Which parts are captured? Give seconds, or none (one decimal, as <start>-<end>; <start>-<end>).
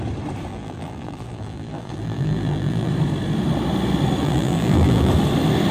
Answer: 0.0-0.5; 2.9-4.2; 5.1-5.7